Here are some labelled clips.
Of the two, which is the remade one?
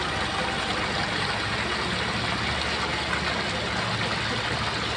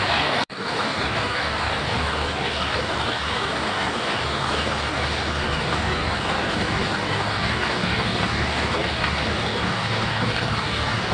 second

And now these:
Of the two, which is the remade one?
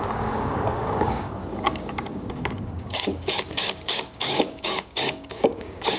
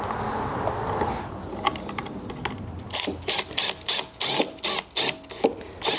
first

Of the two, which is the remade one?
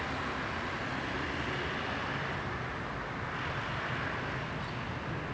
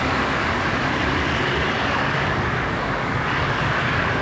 second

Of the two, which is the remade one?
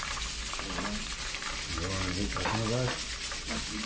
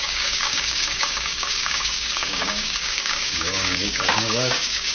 second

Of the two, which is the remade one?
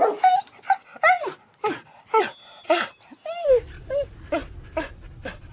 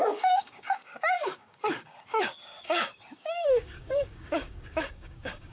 second